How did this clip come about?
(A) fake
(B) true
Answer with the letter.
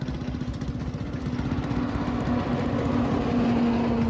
B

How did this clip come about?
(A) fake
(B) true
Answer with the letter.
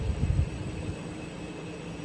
B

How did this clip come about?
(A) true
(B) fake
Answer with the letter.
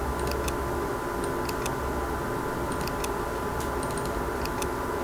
A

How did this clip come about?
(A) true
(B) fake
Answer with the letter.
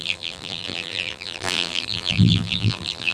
B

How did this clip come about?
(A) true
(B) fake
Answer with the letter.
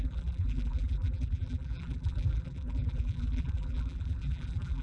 B